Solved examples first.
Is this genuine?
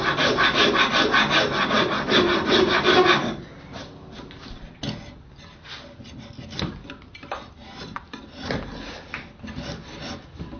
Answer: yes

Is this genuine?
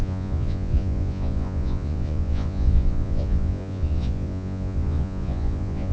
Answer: no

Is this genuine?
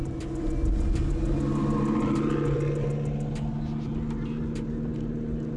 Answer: yes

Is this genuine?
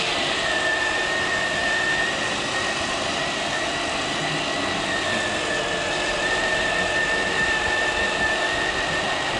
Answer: yes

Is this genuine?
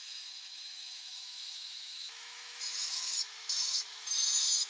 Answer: no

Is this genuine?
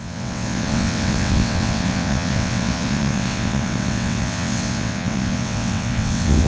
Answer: no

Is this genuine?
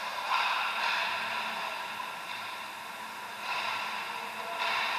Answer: yes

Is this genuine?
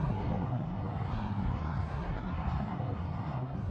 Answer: no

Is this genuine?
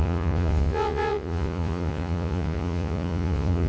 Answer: no